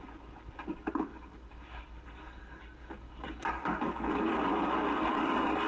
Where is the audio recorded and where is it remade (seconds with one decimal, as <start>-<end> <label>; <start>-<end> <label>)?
0.0-1.1 recorded; 1.1-4.5 remade; 4.5-5.1 recorded; 5.1-5.7 remade